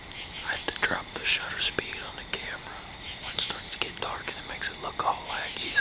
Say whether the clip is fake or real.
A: real